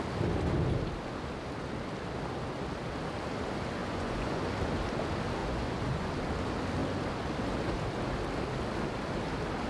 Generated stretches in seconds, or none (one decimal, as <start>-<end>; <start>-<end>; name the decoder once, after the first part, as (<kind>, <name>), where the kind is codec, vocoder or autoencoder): 3.8-4.4 (vocoder, Vocos); 5.4-6.1